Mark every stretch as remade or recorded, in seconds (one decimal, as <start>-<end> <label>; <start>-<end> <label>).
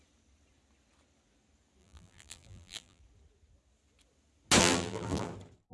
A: 0.0-1.8 recorded; 1.8-3.0 remade; 3.0-4.6 recorded; 4.6-5.3 remade; 5.3-5.7 recorded